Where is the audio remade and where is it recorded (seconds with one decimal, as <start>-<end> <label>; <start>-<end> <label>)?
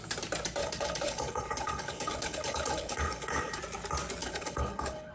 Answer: 0.0-0.6 recorded; 0.6-3.6 remade; 3.6-4.2 recorded; 4.2-5.1 remade